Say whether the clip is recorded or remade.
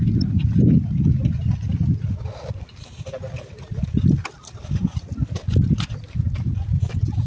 recorded